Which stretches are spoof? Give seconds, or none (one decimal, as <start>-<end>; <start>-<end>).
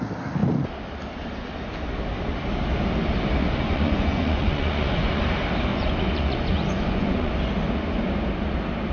3.4-5.2; 5.7-7.3